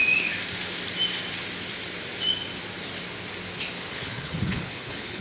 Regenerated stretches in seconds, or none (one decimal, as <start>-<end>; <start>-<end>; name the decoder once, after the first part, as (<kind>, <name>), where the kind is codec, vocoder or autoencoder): 3.9-5.2 (codec, HILCodec)